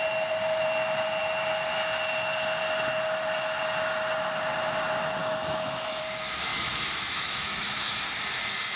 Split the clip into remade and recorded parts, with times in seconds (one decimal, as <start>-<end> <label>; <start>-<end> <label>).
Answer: 0.0-5.2 recorded; 5.2-6.0 remade; 6.0-6.5 recorded; 6.5-8.0 remade; 8.0-8.8 recorded